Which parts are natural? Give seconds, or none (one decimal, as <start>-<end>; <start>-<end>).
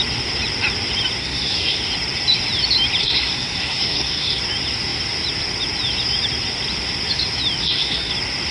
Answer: 0.0-1.2; 1.8-3.0; 4.4-7.6; 8.1-8.5